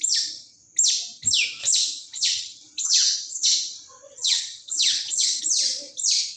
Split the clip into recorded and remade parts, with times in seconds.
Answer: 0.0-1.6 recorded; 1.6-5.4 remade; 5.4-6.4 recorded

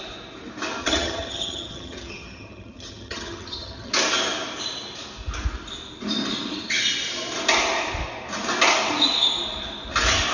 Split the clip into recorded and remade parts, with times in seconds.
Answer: 0.0-0.8 recorded; 0.8-3.9 remade; 3.9-10.3 recorded